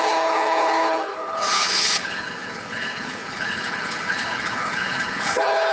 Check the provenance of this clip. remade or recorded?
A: remade